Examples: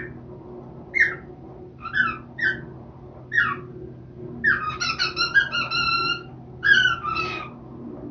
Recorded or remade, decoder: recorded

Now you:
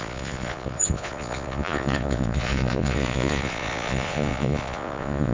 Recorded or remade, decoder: remade, vocoder, Vocos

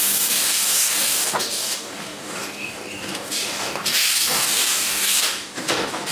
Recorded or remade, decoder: remade, codec, DAC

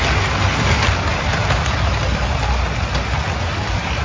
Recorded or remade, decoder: recorded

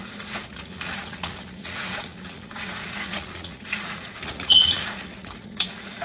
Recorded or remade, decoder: remade, vocoder, Vocos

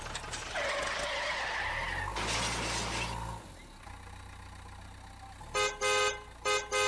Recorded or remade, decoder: recorded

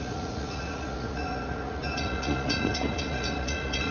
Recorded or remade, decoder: remade, vocoder, Vocos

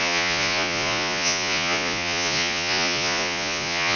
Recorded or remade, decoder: remade, vocoder, Vocos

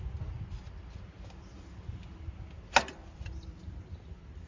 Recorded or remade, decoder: recorded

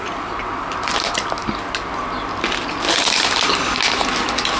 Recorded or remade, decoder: recorded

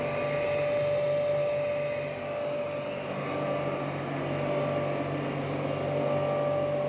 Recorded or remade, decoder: recorded